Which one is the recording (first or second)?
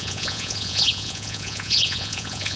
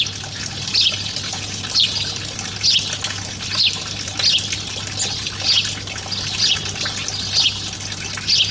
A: second